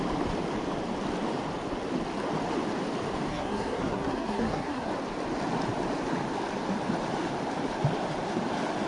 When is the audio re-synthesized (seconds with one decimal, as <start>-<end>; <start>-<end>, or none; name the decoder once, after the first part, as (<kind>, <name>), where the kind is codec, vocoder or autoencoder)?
3.3-4.9 (codec, SNAC)